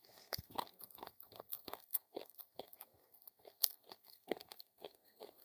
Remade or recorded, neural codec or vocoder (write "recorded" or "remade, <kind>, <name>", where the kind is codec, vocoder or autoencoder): remade, codec, SNAC